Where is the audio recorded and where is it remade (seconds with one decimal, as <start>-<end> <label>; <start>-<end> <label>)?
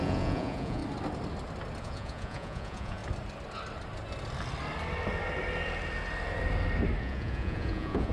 0.0-0.8 remade; 0.8-1.8 recorded; 1.8-3.0 remade; 3.0-7.0 recorded; 7.0-8.1 remade